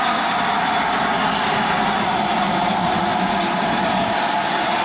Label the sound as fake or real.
real